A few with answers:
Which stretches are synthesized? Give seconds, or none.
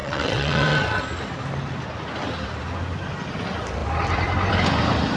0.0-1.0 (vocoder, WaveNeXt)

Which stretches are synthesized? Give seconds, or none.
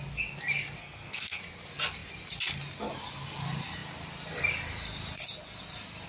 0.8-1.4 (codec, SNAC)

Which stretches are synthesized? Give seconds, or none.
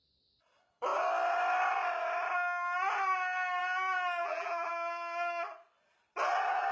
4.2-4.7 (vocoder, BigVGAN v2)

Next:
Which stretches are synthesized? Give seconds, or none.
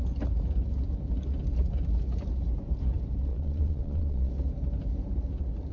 3.3-4.3 (vocoder, Vocos)